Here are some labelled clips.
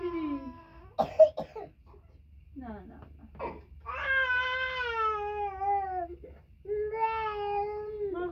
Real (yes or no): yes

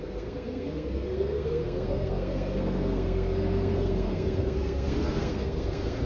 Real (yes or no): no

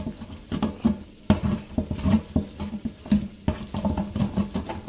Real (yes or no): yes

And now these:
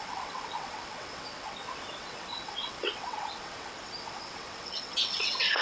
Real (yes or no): no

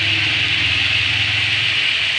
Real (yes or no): yes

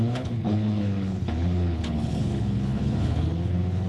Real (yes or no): no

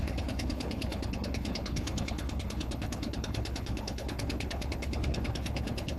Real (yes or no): no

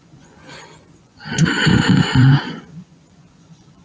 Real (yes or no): no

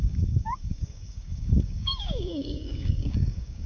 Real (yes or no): no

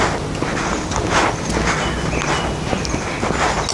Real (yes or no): yes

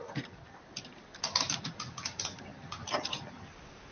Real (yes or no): yes